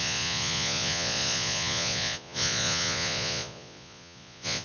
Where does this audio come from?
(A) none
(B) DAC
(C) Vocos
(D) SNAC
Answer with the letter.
C